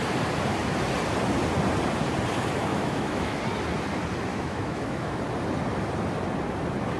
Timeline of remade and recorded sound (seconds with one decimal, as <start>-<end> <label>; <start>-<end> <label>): 0.0-2.7 recorded; 2.7-3.4 remade; 3.4-4.3 recorded; 4.3-5.2 remade; 5.2-7.0 recorded